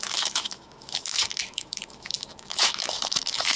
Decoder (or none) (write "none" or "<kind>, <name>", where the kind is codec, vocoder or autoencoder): autoencoder, DAC-VAE